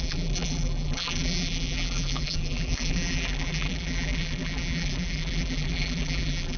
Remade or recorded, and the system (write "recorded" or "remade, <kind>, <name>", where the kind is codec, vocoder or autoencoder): remade, vocoder, BigVGAN v2